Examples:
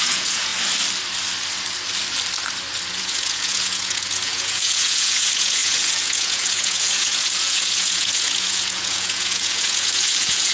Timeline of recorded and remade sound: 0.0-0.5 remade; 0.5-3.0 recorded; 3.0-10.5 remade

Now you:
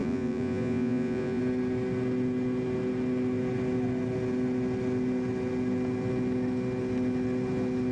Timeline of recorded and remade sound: 0.0-1.4 remade; 1.4-7.9 recorded